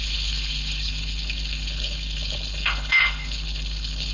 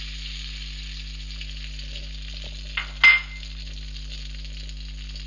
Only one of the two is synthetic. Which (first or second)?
first